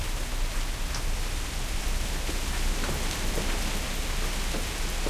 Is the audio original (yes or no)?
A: yes